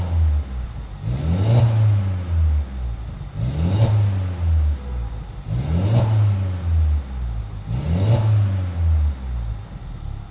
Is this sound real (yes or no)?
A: yes